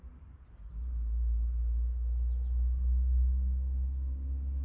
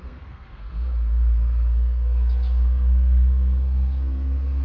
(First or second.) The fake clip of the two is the second